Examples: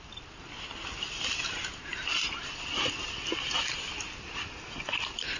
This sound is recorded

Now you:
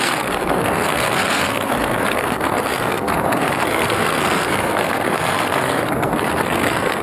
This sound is remade